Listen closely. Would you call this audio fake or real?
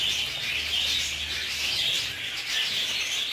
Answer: real